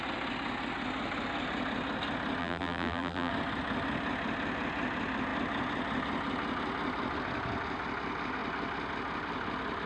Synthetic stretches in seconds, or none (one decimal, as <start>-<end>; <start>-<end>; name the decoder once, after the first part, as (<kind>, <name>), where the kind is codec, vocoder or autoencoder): 2.4-3.3 (vocoder, BigVGAN v2)

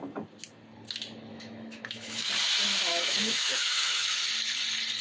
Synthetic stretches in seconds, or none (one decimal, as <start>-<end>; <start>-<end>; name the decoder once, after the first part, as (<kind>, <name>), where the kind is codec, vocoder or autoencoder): 1.3-2.3 (autoencoder, DAC-VAE); 2.9-4.3